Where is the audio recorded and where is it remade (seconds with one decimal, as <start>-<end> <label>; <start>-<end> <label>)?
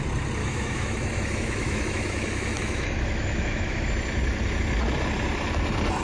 0.0-0.4 recorded; 0.4-3.9 remade; 3.9-6.0 recorded